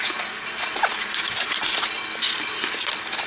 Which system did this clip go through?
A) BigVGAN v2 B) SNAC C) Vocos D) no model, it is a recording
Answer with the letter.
D